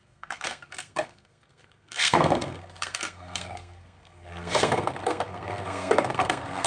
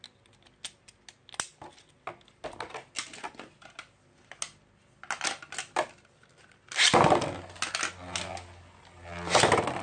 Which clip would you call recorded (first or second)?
second